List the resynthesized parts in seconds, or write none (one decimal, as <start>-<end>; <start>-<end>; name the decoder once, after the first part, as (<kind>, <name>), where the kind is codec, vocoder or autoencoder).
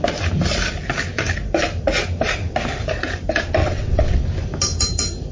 3.6-4.2 (vocoder, WaveNeXt)